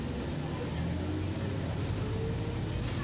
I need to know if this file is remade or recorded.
recorded